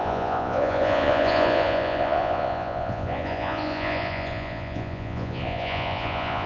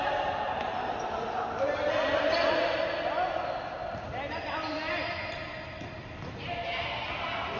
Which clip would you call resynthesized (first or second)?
first